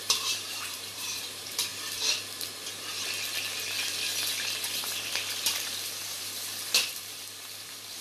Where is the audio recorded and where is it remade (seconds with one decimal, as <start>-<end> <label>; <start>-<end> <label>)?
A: 0.0-1.7 remade; 1.7-5.4 recorded; 5.4-8.0 remade